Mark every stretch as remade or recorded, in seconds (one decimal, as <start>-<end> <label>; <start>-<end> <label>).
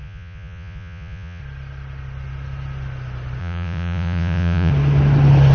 0.0-1.4 remade; 1.4-3.4 recorded; 3.4-4.7 remade; 4.7-5.5 recorded